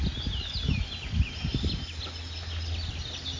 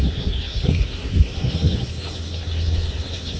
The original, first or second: first